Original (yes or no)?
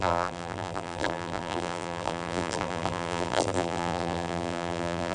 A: no